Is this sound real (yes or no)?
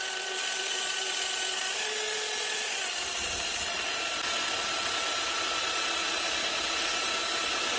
yes